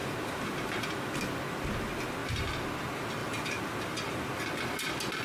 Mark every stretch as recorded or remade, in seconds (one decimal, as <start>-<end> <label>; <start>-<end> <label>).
0.0-1.1 remade; 1.1-3.2 recorded; 3.2-4.3 remade; 4.3-5.2 recorded